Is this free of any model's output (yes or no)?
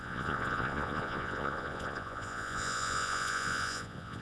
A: no